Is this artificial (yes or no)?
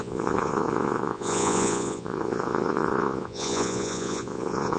yes